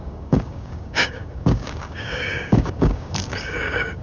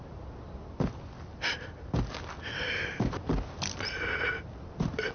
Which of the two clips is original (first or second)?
second